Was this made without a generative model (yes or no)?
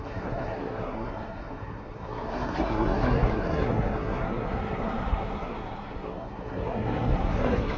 no